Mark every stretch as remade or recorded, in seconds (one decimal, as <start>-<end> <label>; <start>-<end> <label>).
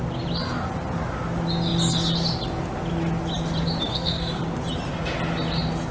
0.0-3.9 recorded; 3.9-4.4 remade; 4.4-5.9 recorded